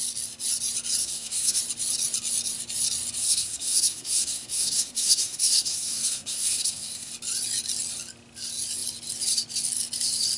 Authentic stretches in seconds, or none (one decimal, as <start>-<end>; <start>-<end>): 0.0-1.0; 1.6-3.2; 7.1-10.4